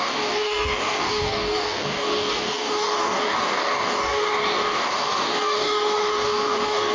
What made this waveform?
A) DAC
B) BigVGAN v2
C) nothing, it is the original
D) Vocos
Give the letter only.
A